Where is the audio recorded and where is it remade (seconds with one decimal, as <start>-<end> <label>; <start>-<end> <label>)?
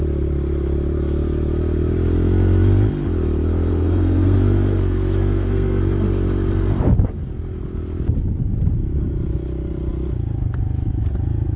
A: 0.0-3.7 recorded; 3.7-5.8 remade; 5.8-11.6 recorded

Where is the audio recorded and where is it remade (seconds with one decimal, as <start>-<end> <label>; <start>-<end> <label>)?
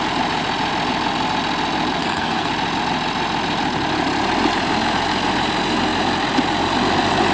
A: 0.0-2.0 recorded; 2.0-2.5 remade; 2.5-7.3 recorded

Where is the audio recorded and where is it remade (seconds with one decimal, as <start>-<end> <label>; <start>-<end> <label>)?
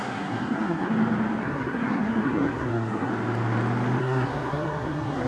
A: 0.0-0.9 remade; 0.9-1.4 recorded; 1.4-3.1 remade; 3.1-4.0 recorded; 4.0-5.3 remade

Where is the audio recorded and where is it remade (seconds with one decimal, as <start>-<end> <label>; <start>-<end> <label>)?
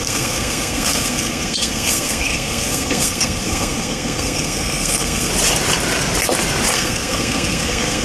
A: 0.0-5.3 remade; 5.3-6.7 recorded; 6.7-8.0 remade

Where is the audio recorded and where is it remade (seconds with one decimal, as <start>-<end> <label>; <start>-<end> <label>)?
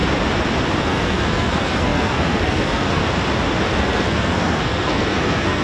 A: 0.0-0.8 recorded; 0.8-3.0 remade; 3.0-3.7 recorded; 3.7-5.6 remade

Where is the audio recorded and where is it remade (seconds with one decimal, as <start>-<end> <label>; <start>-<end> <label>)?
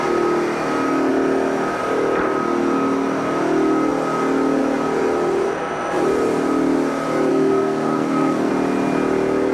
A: 0.0-7.3 recorded; 7.3-8.5 remade; 8.5-9.5 recorded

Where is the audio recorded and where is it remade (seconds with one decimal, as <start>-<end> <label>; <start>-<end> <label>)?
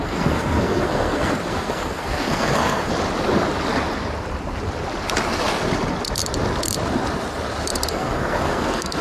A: 0.0-2.9 remade; 2.9-7.9 recorded; 7.9-9.0 remade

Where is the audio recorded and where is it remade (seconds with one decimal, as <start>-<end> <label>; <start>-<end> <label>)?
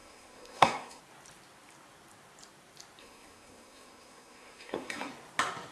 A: 0.0-1.0 remade; 1.0-3.0 recorded; 3.0-5.1 remade; 5.1-5.7 recorded